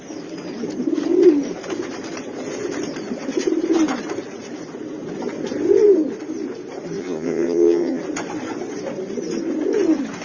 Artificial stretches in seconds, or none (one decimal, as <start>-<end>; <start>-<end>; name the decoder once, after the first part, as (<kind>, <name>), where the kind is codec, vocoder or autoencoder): 7.0-8.0 (vocoder, HiFi-GAN)